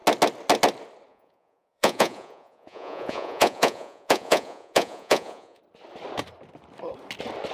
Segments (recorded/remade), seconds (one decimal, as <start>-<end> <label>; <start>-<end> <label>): 0.0-1.1 recorded; 1.1-5.6 remade; 5.6-7.5 recorded